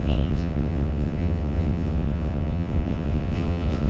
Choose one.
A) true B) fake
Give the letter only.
B